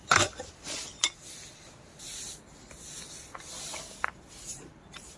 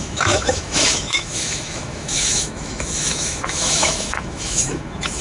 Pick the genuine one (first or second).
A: first